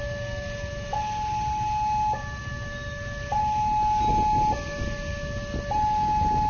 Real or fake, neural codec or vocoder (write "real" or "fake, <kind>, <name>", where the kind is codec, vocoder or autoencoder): real